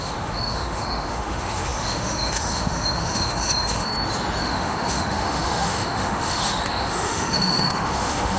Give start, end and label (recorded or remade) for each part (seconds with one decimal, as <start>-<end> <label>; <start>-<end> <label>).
0.0-3.9 remade; 3.9-4.4 recorded; 4.4-8.4 remade